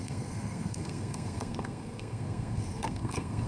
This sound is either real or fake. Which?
fake